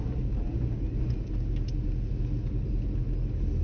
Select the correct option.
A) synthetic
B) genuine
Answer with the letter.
B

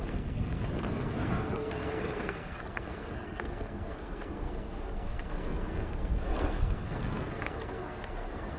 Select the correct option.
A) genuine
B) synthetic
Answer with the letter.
B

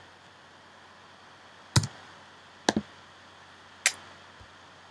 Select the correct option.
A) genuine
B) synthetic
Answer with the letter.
A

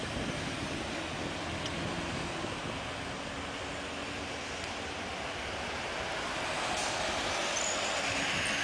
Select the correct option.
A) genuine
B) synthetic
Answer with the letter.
A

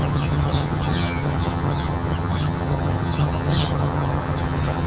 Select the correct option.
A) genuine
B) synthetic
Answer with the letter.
B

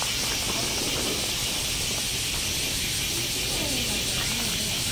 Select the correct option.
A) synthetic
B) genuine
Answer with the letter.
B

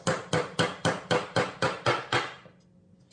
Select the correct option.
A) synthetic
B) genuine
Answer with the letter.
B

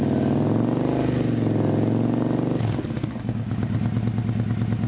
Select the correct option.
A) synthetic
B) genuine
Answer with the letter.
B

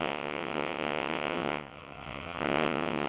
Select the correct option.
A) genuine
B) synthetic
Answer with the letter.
B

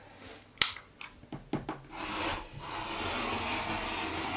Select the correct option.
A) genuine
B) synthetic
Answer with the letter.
A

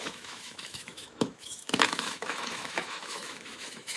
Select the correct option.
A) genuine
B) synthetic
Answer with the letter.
B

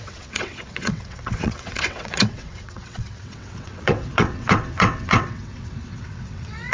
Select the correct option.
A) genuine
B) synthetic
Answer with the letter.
B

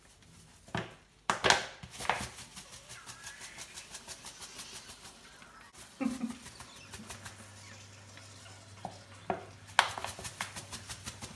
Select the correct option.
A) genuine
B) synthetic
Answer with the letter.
A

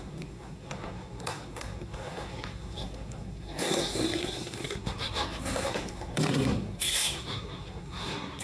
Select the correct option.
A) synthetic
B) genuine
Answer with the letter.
A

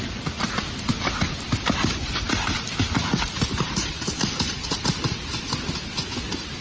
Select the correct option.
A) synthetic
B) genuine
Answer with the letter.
B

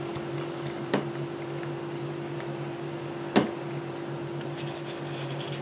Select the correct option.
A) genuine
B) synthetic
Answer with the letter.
A